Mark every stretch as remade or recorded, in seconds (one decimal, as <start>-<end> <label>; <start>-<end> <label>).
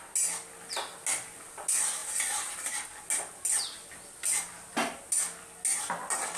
0.0-6.4 recorded